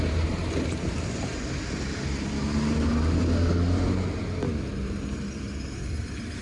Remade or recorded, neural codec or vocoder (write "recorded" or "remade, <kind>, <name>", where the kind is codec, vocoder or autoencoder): recorded